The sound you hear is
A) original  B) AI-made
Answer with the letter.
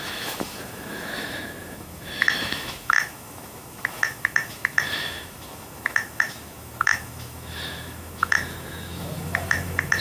B